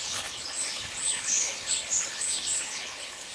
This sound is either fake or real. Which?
fake